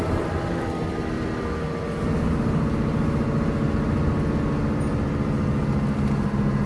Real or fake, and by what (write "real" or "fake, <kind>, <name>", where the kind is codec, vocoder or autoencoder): real